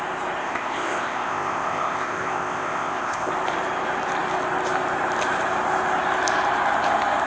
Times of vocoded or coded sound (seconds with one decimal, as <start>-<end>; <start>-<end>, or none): 0.4-3.3